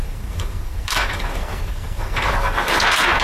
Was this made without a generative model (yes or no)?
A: no